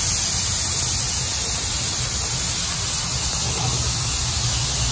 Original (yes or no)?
yes